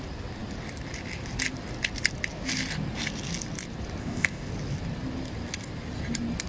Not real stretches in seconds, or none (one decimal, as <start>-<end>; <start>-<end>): 4.0-4.5